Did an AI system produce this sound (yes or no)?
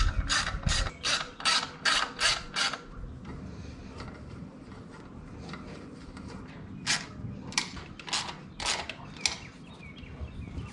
no